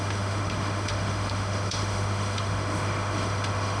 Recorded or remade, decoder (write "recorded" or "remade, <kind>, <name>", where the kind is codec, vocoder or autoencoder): remade, autoencoder, DAC-VAE